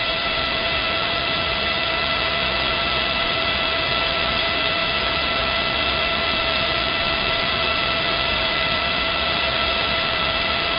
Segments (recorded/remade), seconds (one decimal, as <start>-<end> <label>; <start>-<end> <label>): 0.0-10.8 remade